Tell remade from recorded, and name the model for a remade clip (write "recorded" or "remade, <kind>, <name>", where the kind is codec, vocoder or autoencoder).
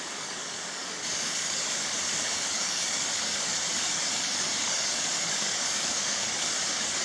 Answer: remade, codec, DAC